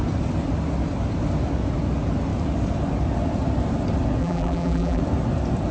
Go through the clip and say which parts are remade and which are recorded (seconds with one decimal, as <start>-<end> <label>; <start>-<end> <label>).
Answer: 0.0-4.2 recorded; 4.2-5.0 remade; 5.0-5.7 recorded